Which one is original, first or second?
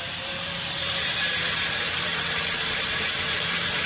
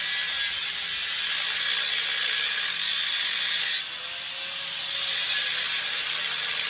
second